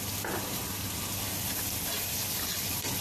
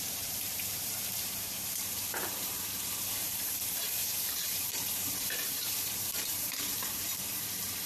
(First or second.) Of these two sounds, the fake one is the second